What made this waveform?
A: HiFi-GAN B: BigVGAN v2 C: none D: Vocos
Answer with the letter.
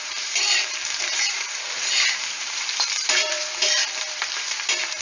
B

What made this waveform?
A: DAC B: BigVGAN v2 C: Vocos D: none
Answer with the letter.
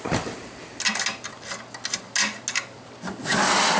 D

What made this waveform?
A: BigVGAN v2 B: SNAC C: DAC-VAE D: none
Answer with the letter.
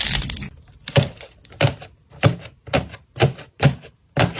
D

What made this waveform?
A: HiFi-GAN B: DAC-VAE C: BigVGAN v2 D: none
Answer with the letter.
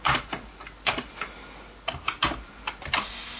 D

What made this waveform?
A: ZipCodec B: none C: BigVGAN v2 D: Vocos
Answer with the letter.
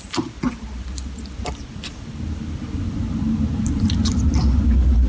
B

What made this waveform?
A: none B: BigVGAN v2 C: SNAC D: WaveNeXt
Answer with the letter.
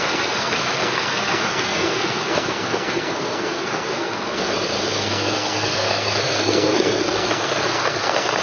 C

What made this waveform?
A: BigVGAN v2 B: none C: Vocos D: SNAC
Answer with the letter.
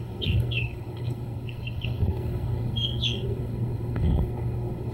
D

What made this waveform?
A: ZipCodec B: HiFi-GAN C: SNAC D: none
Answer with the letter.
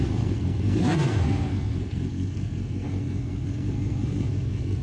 C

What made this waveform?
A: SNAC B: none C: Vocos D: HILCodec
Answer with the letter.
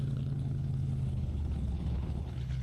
D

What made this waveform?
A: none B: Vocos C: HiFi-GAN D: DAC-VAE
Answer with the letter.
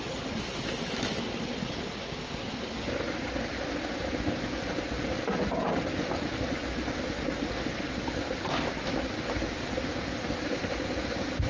A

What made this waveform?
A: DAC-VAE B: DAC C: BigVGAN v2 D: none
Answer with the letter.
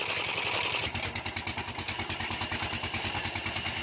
D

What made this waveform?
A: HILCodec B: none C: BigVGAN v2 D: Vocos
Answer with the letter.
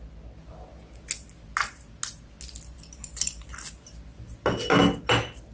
B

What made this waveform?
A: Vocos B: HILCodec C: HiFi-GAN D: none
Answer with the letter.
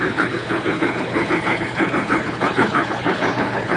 B